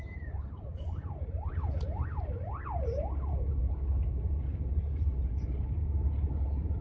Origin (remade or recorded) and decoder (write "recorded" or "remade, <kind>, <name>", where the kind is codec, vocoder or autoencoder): remade, vocoder, BigVGAN v2